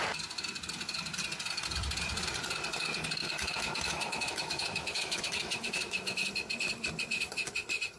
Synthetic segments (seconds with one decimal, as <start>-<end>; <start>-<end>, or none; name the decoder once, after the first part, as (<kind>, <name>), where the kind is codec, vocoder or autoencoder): 3.2-6.3 (autoencoder, DAC-VAE)